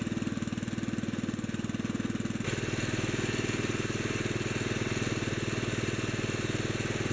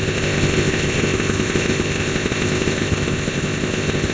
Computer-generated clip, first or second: second